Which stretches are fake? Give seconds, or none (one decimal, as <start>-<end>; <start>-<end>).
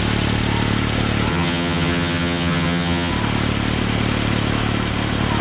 1.3-3.1